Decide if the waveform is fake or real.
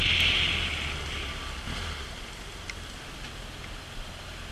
real